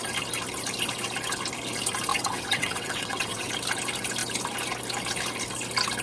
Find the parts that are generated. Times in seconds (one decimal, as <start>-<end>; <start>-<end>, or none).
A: 2.1-3.5